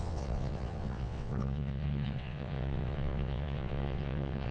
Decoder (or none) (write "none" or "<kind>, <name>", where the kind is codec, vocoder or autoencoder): vocoder, WaveNeXt